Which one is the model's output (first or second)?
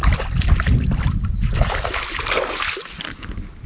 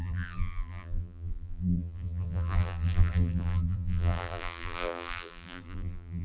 second